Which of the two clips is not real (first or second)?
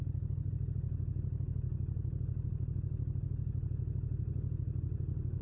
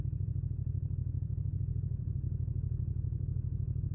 second